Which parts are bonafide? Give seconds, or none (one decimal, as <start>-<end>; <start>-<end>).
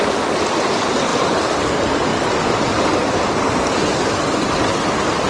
0.0-5.3